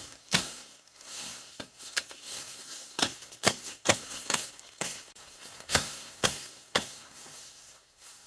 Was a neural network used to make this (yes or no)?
yes